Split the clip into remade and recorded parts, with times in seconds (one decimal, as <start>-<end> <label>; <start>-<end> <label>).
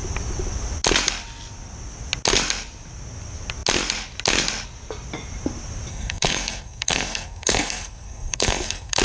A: 0.0-5.9 recorded; 5.9-9.0 remade